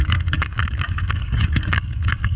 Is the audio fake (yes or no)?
yes